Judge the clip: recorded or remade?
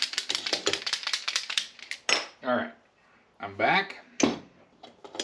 recorded